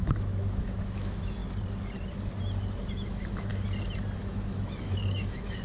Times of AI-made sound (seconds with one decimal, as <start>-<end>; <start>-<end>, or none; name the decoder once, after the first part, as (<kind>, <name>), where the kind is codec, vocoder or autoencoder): 0.0-1.4 (autoencoder, DAC-VAE); 2.9-3.5; 4.2-5.6